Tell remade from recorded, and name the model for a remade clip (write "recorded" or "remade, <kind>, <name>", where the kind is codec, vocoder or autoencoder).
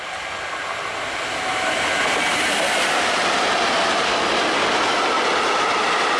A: recorded